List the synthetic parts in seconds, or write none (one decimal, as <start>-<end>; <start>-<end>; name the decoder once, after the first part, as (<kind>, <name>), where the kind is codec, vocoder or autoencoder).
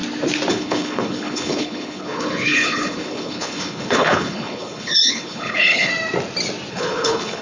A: 0.5-5.9 (codec, HILCodec); 6.7-7.4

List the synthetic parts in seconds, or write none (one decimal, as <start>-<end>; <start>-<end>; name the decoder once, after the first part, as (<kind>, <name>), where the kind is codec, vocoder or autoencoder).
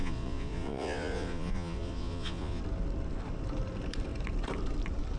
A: 0.0-2.6 (vocoder, Vocos)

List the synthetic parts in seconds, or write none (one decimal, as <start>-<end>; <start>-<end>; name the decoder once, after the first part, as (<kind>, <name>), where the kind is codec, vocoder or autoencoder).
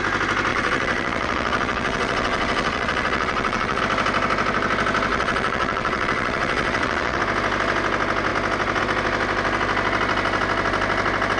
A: 0.5-3.8 (vocoder, WaveNeXt); 5.1-7.2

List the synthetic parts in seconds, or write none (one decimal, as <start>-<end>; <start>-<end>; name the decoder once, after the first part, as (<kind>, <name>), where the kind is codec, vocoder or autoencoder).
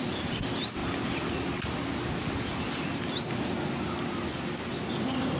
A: none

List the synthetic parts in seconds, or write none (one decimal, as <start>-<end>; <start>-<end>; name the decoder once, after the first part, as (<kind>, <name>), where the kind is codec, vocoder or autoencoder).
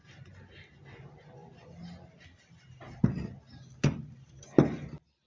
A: none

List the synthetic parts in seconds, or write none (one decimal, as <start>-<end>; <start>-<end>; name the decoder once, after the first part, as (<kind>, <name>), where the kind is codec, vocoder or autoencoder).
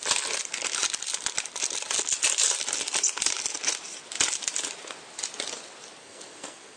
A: 6.0-6.8 (codec, SNAC)